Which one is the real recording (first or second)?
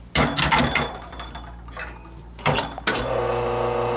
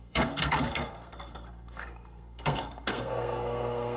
first